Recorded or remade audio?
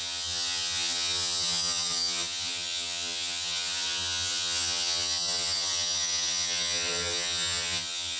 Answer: remade